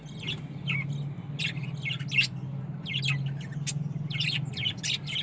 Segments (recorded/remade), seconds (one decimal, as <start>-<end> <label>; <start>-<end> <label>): 0.0-5.2 recorded